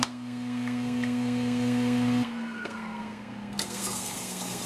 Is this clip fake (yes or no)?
yes